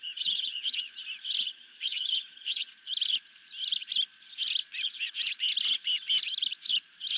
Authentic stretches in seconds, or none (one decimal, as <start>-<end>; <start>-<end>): 0.9-1.4; 2.7-7.2